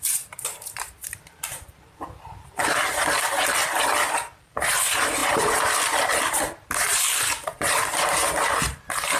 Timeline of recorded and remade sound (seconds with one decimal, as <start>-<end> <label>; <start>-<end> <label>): 0.0-3.6 remade; 3.6-4.5 recorded; 4.5-7.9 remade; 7.9-8.7 recorded; 8.7-9.2 remade